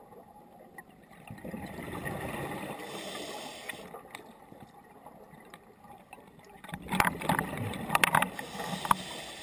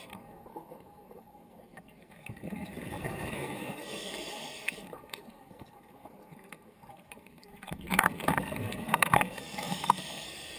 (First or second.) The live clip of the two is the first